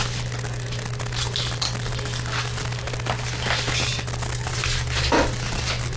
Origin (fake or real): real